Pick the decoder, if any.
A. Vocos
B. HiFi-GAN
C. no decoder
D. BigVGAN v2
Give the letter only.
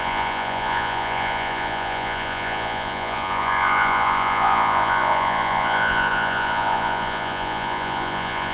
A